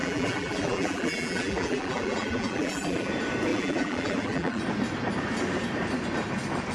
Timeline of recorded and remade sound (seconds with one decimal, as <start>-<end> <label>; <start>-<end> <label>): 0.0-3.1 remade; 3.1-3.5 recorded; 3.5-4.6 remade; 4.6-6.7 recorded